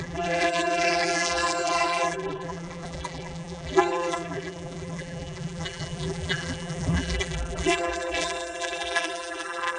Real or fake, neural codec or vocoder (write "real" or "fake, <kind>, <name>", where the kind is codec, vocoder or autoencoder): fake, vocoder, BigVGAN v2